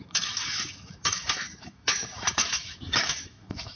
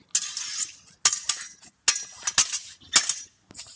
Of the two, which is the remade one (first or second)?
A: first